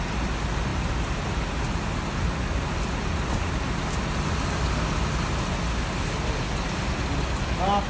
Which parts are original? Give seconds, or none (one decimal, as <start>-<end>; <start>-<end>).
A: 0.0-7.9